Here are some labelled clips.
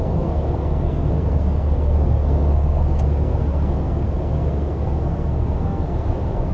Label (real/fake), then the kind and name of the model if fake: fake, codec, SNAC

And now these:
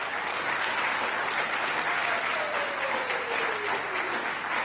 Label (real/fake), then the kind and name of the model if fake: real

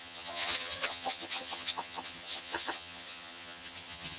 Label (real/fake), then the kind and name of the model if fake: fake, vocoder, HiFi-GAN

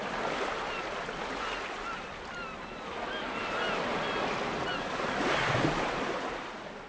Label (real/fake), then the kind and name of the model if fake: real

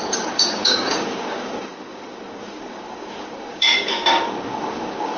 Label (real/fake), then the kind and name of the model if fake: fake, codec, DAC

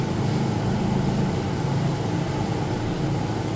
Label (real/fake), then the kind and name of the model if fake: real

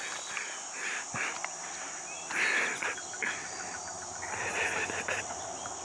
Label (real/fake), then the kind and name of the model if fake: real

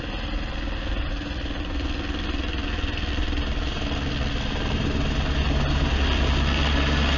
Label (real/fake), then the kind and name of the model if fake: real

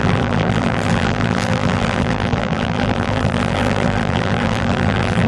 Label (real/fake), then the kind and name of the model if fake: fake, vocoder, BigVGAN v2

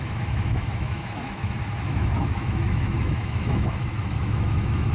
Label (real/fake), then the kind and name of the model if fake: fake, autoencoder, DAC-VAE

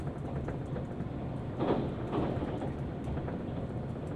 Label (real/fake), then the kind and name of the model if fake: real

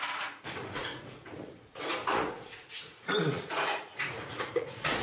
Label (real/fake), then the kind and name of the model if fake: fake, vocoder, Vocos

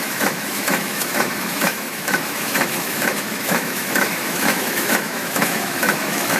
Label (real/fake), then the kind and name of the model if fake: fake, autoencoder, DAC-VAE